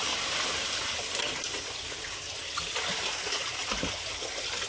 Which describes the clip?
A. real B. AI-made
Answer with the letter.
A